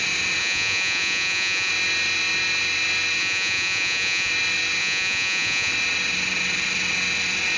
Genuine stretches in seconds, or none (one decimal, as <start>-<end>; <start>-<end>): 0.0-0.4; 1.7-3.2; 4.3-4.8; 5.7-7.6